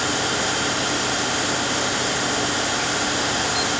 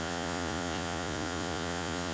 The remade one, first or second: second